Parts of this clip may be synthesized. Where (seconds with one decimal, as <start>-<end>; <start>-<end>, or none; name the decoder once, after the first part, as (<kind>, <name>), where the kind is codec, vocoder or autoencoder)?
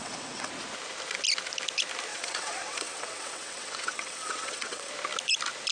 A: 0.0-0.5 (vocoder, WaveNeXt); 2.1-4.9